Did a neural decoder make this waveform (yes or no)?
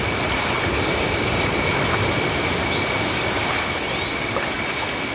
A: no